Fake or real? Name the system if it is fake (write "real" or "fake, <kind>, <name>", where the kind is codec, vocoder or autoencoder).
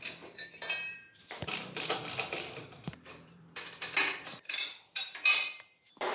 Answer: fake, vocoder, BigVGAN v2